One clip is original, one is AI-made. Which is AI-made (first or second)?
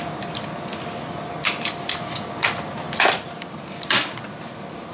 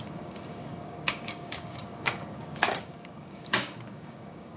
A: second